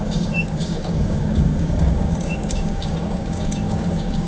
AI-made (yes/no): yes